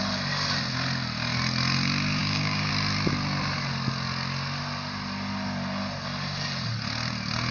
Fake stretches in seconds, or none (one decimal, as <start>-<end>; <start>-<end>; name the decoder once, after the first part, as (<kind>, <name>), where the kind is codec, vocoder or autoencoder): 2.2-2.7 (codec, DAC)